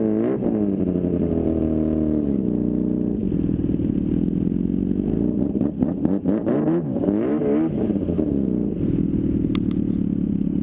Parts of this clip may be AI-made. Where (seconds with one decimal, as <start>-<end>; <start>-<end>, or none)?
none